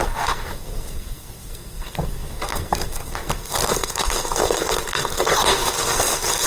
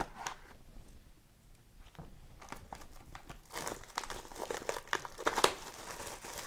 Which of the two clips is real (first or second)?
second